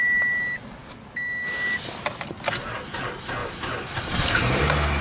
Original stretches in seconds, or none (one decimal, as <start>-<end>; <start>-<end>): 0.0-3.4; 4.6-5.0